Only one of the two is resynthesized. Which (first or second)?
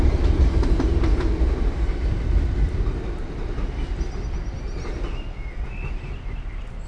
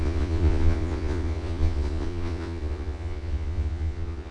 second